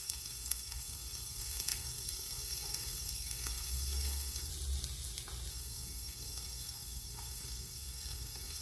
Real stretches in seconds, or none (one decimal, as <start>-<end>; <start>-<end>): 4.5-5.5